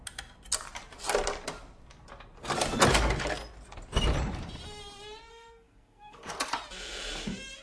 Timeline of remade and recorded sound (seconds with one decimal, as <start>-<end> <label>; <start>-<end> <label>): 0.0-5.3 recorded; 5.3-6.3 remade; 6.3-7.6 recorded